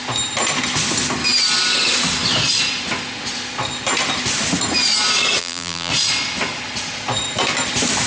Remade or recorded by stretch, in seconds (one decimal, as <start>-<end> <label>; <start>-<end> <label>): 0.0-5.4 recorded; 5.4-5.9 remade; 5.9-8.1 recorded